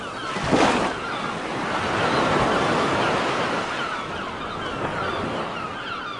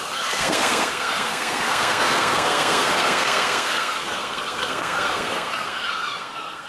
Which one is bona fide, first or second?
first